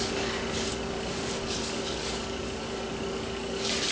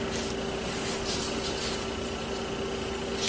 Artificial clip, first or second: first